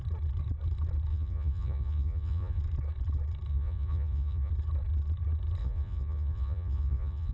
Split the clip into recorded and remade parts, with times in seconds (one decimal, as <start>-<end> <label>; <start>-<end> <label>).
0.0-1.1 recorded; 1.1-2.6 remade; 2.6-3.5 recorded; 3.5-4.5 remade; 4.5-5.6 recorded; 5.6-7.3 remade